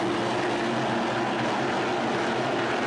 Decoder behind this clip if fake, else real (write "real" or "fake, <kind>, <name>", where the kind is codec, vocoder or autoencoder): real